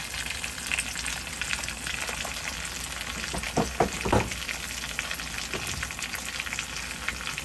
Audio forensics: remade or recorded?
recorded